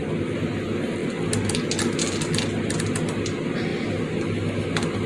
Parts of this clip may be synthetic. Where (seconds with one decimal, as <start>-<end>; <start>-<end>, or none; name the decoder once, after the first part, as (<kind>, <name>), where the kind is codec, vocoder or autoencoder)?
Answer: none